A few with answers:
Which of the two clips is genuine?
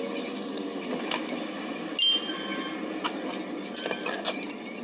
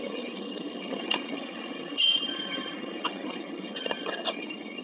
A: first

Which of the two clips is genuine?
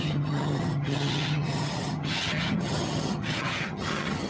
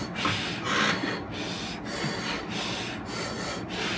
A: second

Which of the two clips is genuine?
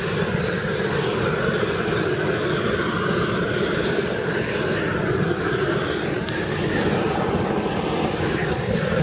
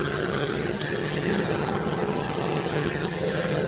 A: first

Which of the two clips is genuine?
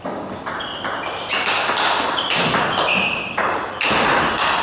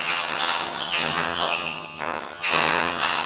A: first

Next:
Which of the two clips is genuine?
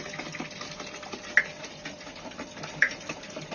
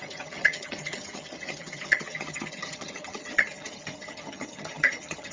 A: first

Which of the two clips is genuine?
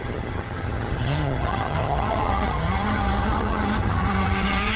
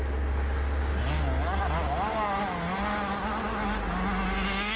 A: second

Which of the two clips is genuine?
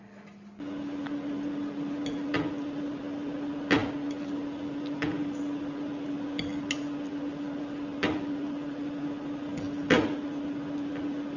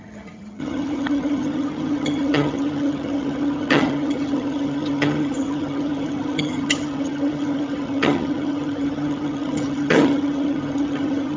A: first